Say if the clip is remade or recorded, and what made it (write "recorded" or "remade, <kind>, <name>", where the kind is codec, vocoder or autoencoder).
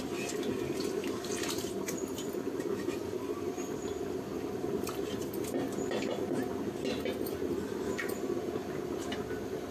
recorded